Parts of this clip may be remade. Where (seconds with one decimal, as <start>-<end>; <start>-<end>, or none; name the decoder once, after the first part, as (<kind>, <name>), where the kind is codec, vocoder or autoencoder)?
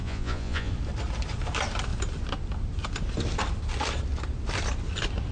0.0-0.7 (vocoder, Vocos)